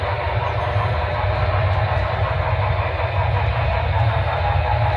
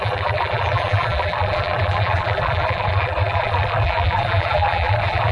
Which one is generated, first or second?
second